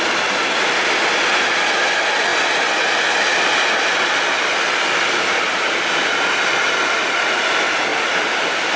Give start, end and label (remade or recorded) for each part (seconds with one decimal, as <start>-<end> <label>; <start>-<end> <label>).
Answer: 0.0-8.8 recorded

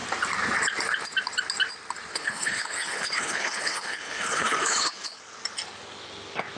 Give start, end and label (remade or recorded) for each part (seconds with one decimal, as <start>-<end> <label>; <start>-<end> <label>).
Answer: 0.0-2.1 recorded; 2.1-5.2 remade; 5.2-6.6 recorded

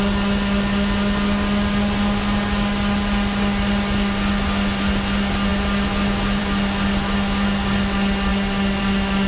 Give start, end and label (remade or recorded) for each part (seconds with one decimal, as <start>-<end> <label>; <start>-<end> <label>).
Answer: 0.0-9.3 recorded

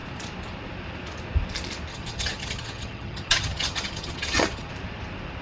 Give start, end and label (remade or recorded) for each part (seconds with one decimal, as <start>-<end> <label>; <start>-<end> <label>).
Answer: 0.0-1.9 recorded; 1.9-4.7 remade; 4.7-5.4 recorded

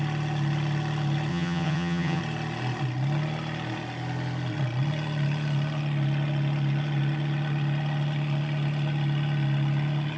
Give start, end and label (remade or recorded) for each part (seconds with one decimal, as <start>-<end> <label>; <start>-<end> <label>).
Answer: 0.0-1.3 recorded; 1.3-2.2 remade; 2.2-10.2 recorded

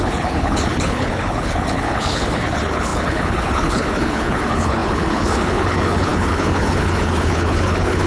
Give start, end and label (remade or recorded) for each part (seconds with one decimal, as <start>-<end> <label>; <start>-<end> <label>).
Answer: 0.0-8.1 remade

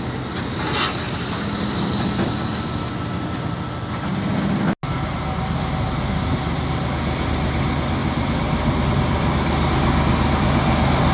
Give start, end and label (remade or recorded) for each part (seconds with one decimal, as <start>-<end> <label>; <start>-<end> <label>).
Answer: 0.0-11.1 recorded